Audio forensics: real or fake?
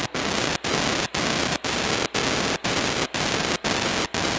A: real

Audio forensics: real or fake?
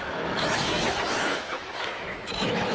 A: fake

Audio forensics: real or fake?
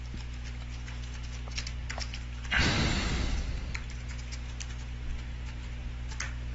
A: real